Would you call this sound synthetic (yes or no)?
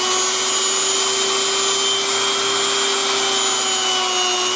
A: no